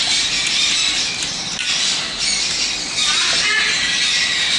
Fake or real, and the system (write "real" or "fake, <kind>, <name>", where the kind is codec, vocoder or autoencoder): real